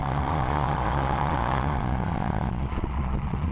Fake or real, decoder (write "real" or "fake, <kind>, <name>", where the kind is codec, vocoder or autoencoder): fake, vocoder, Vocos